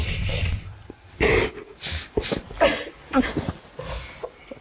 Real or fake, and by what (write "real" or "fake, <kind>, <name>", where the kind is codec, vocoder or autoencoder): real